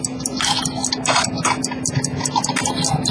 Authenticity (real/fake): real